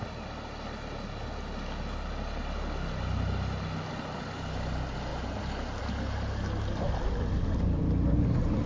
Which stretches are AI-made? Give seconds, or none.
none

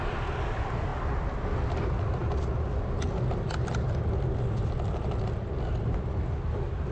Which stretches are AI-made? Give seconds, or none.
none

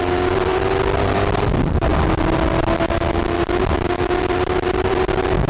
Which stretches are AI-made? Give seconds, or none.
0.0-1.9 (vocoder, BigVGAN v2); 4.2-5.5

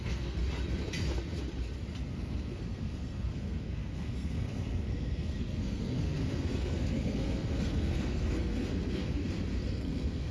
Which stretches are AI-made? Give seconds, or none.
0.0-0.4 (codec, SNAC); 2.1-9.2; 9.7-10.3

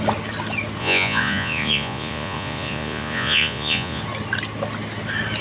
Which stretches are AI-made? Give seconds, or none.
0.8-4.0 (vocoder, Vocos)

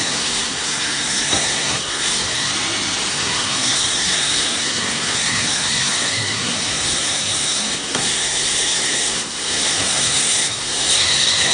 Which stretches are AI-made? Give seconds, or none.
0.0-2.5 (codec, SNAC); 3.1-11.5